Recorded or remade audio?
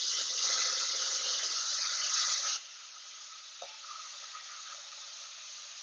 remade